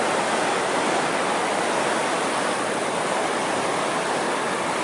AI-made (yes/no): no